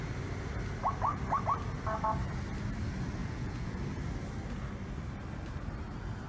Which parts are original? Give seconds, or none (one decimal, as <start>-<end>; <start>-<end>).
0.0-3.2; 3.8-6.3